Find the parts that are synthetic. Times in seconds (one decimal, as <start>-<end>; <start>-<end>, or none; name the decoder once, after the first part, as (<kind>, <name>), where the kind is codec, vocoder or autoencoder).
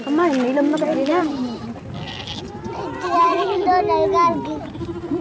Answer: none